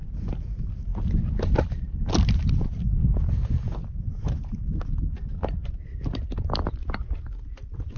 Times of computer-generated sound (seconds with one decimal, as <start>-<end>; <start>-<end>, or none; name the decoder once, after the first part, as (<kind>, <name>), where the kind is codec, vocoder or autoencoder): none